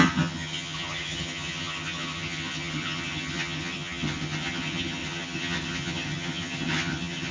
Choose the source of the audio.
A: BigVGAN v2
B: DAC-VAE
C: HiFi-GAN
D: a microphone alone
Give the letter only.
C